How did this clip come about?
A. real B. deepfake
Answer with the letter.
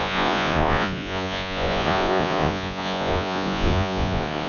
B